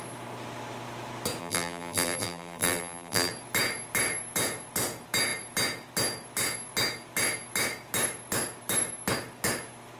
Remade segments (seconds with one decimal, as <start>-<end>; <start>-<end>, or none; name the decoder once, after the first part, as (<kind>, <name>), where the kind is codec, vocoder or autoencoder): 1.4-3.3 (vocoder, BigVGAN v2)